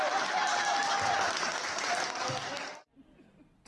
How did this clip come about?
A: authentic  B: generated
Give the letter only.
A